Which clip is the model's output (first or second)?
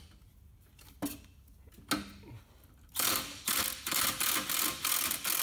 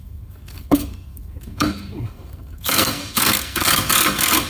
second